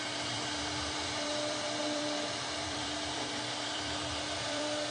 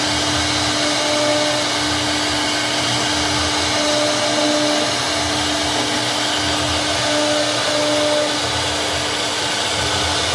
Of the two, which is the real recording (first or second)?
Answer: second